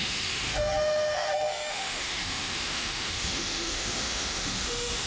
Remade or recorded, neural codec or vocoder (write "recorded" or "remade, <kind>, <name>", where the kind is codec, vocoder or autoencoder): remade, autoencoder, DAC-VAE